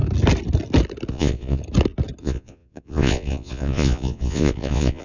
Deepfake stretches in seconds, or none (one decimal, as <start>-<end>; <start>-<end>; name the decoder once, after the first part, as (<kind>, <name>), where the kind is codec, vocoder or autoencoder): 1.1-1.6 (vocoder, Vocos); 2.2-5.0